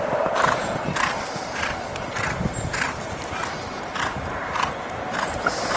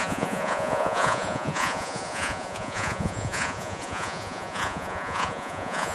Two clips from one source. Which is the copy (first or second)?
second